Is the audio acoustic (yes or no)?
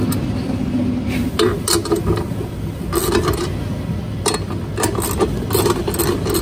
yes